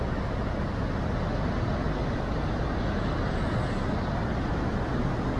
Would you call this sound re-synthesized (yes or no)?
no